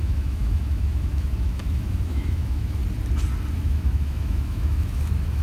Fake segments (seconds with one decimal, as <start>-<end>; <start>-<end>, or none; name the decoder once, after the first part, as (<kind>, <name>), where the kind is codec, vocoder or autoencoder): 0.0-2.8 (autoencoder, DAC-VAE); 3.5-5.4